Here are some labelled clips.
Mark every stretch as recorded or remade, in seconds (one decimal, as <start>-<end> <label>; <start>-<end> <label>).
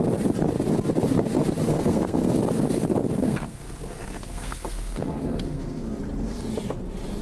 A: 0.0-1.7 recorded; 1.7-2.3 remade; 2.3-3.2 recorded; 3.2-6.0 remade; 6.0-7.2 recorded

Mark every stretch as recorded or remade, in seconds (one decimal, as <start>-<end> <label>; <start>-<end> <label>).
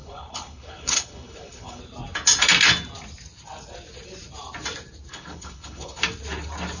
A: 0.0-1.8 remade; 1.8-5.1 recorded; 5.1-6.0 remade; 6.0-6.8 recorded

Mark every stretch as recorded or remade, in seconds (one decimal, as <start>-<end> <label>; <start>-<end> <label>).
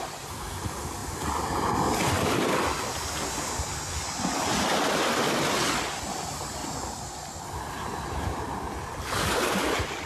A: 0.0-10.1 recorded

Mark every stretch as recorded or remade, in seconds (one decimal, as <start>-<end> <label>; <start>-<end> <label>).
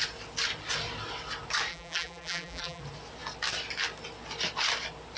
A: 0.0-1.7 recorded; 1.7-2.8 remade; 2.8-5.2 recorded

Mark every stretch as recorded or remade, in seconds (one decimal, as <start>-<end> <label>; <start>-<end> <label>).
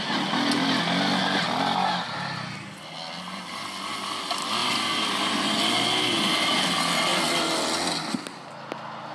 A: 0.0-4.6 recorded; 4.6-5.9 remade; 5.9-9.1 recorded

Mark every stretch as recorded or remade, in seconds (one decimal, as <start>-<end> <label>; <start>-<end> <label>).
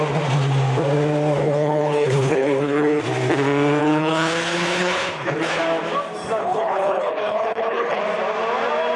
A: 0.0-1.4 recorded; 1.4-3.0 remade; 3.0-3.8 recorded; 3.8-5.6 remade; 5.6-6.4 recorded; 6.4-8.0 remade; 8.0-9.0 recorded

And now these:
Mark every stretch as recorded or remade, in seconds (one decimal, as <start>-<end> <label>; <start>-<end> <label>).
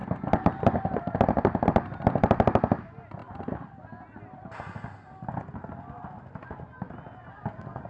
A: 0.0-7.9 recorded